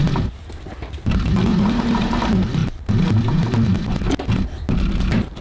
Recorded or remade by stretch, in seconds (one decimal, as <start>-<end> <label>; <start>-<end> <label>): 0.0-1.5 recorded; 1.5-2.2 remade; 2.2-5.4 recorded

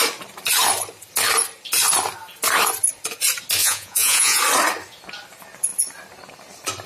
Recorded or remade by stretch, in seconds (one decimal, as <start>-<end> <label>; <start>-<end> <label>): 0.0-3.6 recorded; 3.6-4.4 remade; 4.4-6.9 recorded

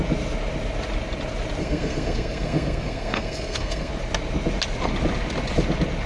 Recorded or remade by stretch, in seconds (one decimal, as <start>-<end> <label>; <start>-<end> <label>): 0.0-1.6 recorded; 1.6-3.9 remade; 3.9-6.1 recorded

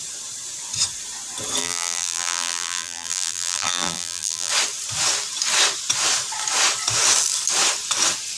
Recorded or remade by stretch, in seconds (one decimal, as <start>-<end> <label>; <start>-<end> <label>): 0.0-1.6 recorded; 1.6-4.5 remade; 4.5-8.4 recorded